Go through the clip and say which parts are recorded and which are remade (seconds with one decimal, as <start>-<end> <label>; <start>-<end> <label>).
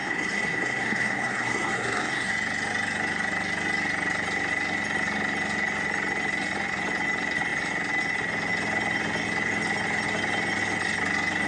0.0-2.3 remade; 2.3-11.5 recorded